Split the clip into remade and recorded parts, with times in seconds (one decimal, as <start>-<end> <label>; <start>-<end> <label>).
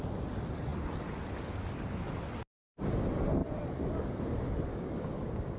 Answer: 0.0-4.7 recorded; 4.7-5.6 remade